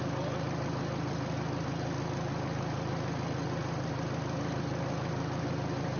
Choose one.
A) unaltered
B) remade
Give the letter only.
A